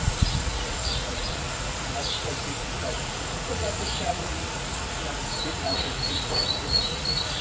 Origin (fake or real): fake